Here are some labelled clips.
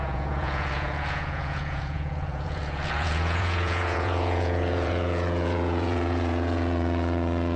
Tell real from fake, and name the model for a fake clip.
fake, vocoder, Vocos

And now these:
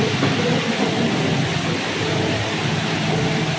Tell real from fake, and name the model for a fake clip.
real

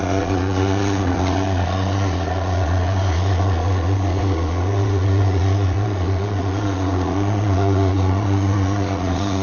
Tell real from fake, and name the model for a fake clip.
fake, vocoder, Vocos